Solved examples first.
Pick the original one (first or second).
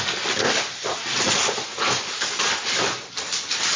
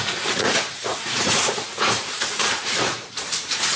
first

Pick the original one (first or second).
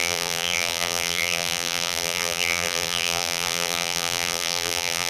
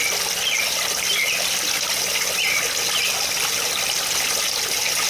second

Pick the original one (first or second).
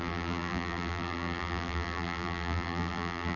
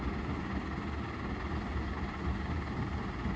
second